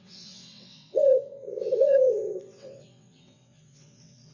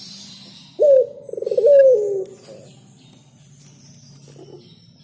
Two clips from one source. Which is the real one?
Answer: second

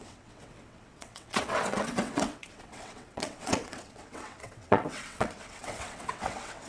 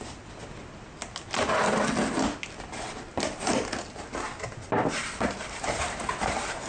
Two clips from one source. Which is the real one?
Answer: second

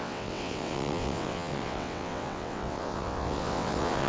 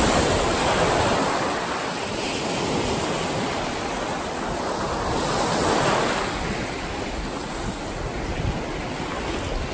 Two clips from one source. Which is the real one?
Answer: second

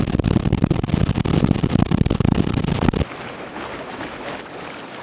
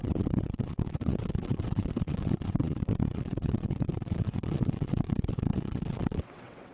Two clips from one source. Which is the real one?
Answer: first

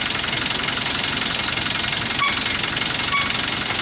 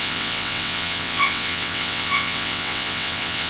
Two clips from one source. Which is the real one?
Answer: first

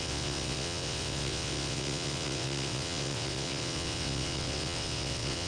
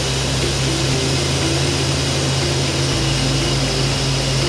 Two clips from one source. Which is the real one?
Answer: second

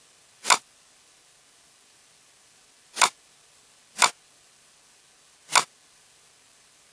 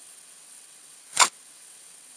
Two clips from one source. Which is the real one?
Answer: first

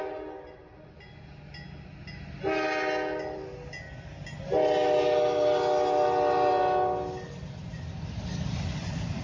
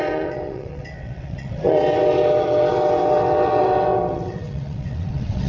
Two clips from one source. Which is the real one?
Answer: first